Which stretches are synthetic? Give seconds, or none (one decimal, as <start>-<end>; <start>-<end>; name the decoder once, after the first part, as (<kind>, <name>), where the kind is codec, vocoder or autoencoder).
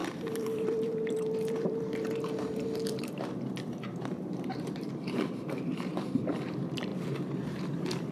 0.0-8.1 (vocoder, BigVGAN v2)